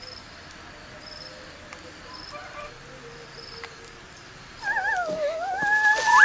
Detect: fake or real real